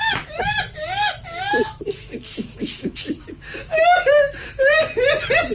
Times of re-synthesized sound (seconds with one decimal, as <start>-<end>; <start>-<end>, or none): 1.5-4.8